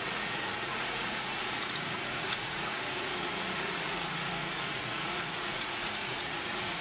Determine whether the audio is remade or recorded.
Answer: remade